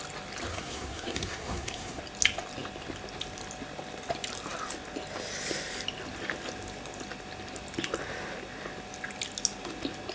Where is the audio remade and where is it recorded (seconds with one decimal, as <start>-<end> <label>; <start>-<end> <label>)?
0.0-0.5 recorded; 0.5-2.0 remade; 2.0-10.1 recorded

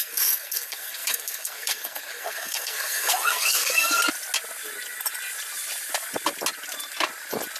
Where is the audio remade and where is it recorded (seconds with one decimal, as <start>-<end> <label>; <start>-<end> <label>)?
0.0-4.0 remade; 4.0-7.6 recorded